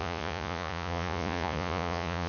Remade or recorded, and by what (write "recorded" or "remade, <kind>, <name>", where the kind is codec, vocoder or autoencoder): remade, vocoder, Vocos